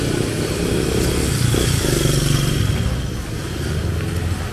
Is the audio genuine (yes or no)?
yes